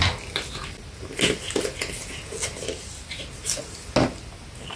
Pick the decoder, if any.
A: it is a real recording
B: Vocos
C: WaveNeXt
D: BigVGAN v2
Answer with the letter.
A